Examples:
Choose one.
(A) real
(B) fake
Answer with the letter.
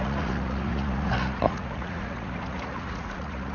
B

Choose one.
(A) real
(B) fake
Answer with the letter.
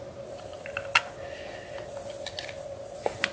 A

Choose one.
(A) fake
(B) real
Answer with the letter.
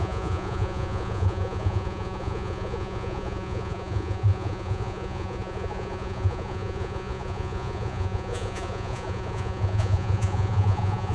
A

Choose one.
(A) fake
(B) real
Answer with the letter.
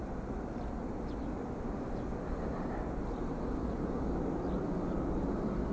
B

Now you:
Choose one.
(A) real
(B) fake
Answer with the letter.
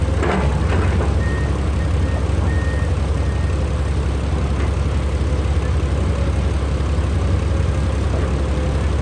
A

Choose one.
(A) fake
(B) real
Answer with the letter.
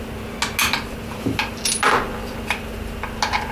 B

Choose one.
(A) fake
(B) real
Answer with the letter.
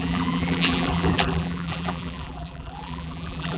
A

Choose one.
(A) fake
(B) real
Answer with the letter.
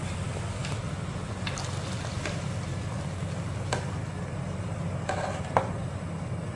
B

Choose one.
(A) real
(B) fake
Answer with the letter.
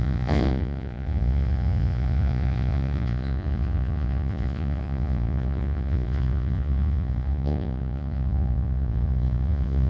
B